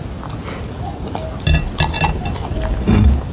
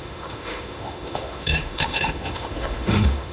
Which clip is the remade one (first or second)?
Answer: second